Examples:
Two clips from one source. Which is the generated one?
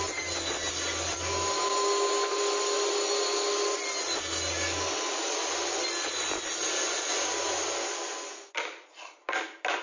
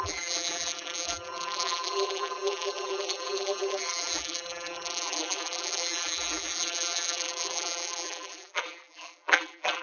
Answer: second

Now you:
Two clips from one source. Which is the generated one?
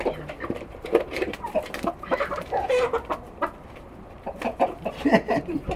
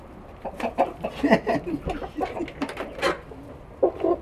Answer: first